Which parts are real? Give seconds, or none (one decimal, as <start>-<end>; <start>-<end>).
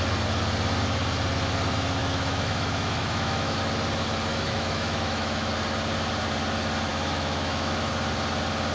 0.0-2.0; 3.6-4.3; 5.5-6.9; 7.9-8.7